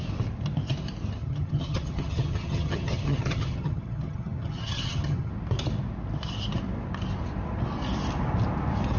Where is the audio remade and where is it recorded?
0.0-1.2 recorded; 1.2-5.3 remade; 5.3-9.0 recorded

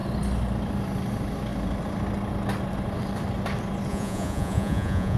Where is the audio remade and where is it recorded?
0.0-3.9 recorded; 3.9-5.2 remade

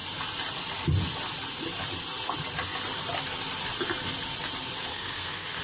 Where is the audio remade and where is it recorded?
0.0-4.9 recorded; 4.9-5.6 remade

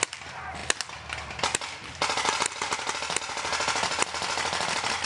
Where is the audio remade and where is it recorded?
0.0-5.1 recorded